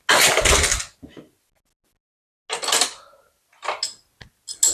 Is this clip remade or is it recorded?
recorded